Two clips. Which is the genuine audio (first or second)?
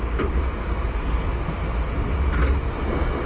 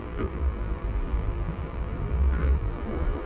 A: first